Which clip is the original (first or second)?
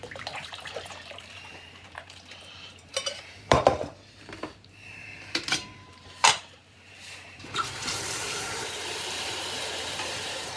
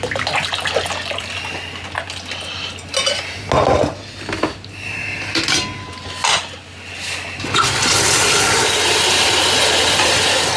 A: second